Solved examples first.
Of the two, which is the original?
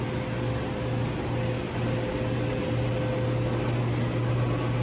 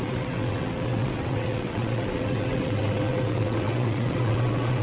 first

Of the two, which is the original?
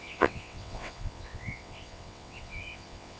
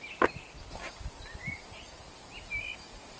second